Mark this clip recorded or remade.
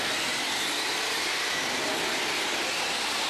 recorded